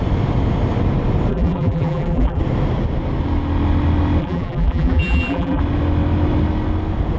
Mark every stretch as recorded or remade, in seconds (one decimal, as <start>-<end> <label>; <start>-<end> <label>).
0.0-1.3 recorded; 1.3-2.4 remade; 2.4-4.2 recorded; 4.2-5.6 remade; 5.6-7.2 recorded

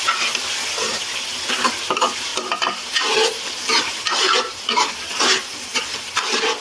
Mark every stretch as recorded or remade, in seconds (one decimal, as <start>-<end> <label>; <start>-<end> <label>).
0.0-6.6 recorded

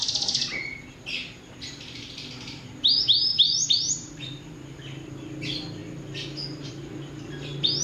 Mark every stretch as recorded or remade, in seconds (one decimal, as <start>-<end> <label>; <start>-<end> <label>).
0.0-3.3 recorded; 3.3-4.2 remade; 4.2-7.8 recorded